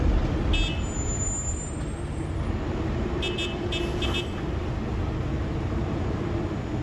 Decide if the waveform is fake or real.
real